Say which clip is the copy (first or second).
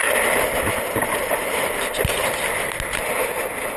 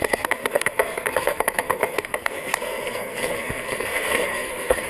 second